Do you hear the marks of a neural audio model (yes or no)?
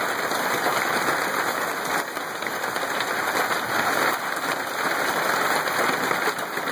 no